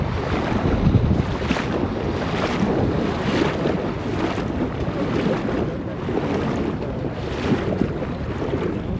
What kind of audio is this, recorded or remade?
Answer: recorded